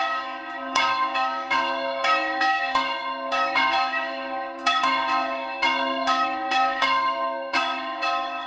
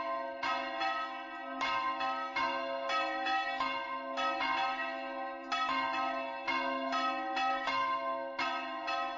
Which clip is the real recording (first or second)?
second